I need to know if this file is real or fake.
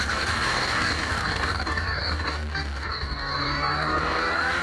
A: fake